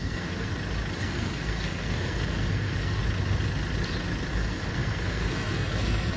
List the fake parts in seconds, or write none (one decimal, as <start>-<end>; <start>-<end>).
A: 0.0-0.5; 1.0-3.0; 4.3-6.2